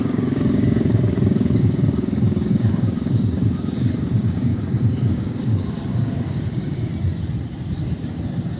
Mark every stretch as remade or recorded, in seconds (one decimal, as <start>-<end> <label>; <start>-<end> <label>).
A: 0.0-6.9 remade; 6.9-8.6 recorded